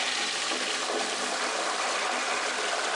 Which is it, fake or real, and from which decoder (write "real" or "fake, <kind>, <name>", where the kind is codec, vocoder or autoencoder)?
fake, vocoder, BigVGAN v2